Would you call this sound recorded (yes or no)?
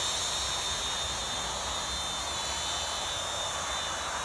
yes